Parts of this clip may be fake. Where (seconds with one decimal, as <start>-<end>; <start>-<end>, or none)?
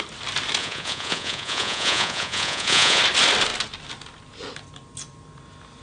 0.6-3.0